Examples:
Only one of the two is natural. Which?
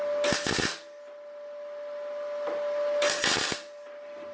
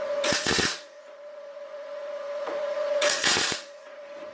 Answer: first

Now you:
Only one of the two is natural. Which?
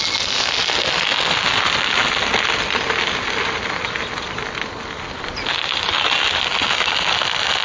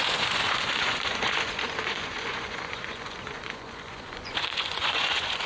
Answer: first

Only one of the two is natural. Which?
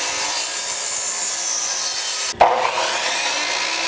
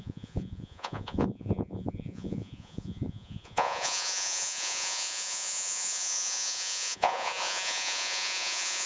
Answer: first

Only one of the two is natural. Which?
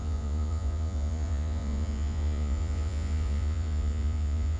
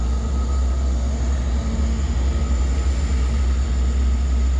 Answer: second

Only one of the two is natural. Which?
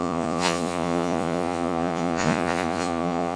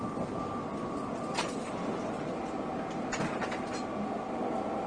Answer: second